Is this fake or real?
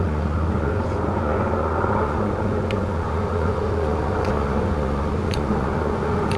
fake